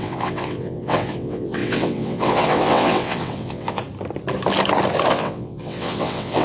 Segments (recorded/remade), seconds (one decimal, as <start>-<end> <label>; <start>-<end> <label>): 0.0-3.8 remade; 3.8-5.1 recorded; 5.1-6.4 remade